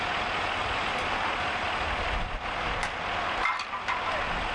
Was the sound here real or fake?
real